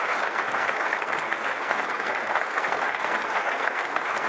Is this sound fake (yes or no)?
yes